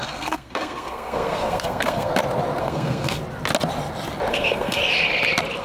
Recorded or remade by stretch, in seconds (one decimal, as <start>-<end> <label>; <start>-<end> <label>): 0.0-2.1 remade; 2.1-2.6 recorded; 2.6-3.2 remade; 3.2-4.3 recorded; 4.3-4.8 remade; 4.8-5.6 recorded